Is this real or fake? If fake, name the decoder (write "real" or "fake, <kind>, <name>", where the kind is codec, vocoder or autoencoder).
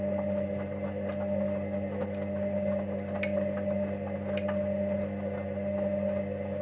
real